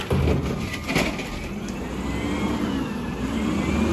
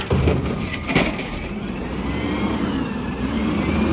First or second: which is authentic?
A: first